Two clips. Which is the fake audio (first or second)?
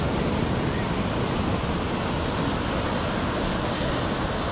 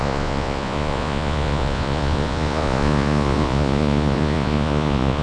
second